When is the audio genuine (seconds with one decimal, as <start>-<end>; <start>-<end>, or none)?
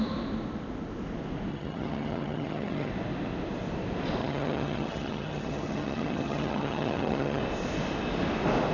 0.0-1.5; 2.9-4.2; 7.4-8.7